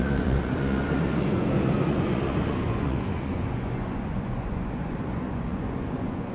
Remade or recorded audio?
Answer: remade